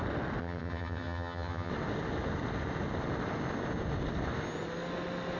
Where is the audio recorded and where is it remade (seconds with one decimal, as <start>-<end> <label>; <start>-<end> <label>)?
0.0-0.4 recorded; 0.4-1.7 remade; 1.7-5.4 recorded